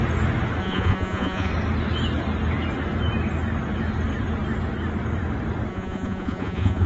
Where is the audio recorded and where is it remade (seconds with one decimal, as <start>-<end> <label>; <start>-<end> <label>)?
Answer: 0.0-0.6 recorded; 0.6-1.5 remade; 1.5-5.7 recorded; 5.7-6.9 remade